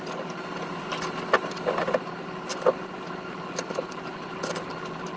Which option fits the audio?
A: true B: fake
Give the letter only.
A